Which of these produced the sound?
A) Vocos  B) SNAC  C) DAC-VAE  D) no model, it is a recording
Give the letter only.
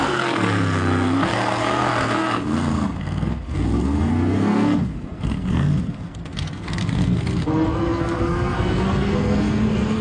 B